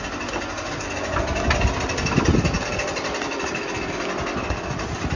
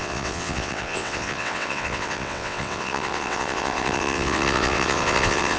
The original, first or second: first